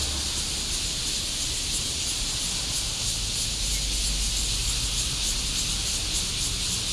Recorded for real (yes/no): yes